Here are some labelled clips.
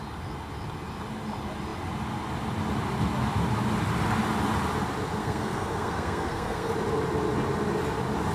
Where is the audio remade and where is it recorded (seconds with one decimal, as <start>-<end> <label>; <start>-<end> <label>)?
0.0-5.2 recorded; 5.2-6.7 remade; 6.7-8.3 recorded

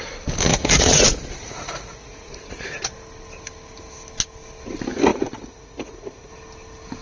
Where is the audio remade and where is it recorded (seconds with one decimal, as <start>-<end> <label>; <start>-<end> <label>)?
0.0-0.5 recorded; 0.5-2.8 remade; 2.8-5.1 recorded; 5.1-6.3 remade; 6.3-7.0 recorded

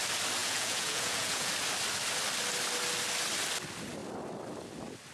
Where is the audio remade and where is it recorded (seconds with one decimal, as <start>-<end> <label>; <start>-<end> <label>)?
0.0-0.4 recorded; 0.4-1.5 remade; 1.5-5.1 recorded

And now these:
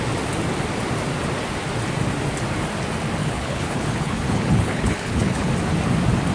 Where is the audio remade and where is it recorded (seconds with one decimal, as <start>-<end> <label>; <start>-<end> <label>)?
0.0-3.2 recorded; 3.2-5.5 remade; 5.5-6.3 recorded